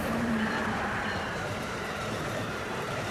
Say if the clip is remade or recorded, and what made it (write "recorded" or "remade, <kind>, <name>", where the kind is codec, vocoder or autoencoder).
remade, vocoder, BigVGAN v2